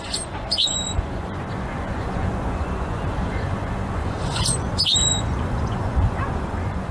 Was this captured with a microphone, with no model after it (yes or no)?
no